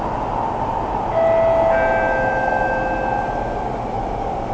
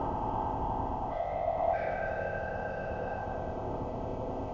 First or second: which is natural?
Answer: first